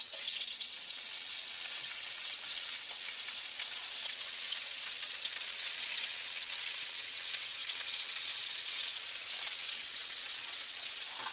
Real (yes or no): no